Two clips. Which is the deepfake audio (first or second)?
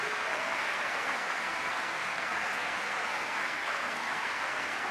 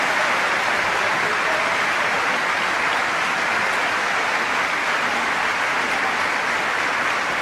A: first